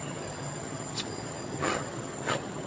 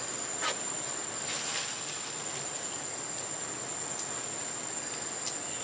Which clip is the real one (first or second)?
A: second